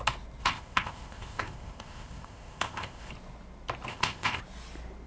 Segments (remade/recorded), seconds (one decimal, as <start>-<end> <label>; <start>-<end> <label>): 0.0-0.4 recorded; 0.4-3.1 remade; 3.1-3.9 recorded; 3.9-4.4 remade; 4.4-5.1 recorded